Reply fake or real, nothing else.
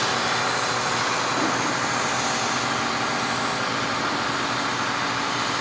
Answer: real